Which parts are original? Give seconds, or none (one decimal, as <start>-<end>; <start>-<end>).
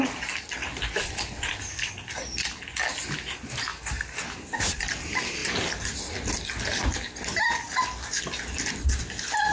0.0-3.7; 4.9-5.4; 6.0-9.5